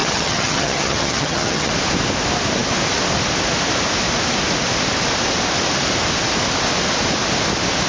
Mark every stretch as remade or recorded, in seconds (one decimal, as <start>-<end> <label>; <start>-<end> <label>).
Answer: 0.0-1.7 remade; 1.7-7.9 recorded